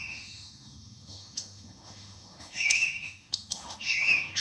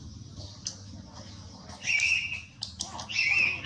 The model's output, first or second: first